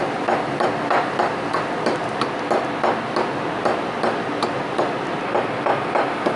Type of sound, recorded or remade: recorded